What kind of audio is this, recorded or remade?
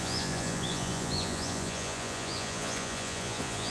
remade